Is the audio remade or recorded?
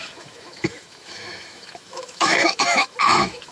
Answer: remade